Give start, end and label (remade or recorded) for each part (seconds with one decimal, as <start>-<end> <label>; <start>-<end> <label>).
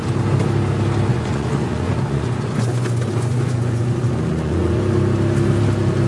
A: 0.0-1.1 recorded; 1.1-4.8 remade; 4.8-6.1 recorded